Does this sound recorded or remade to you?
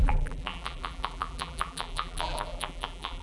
remade